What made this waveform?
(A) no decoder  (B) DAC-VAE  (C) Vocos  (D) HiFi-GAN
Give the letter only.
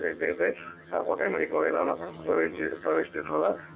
D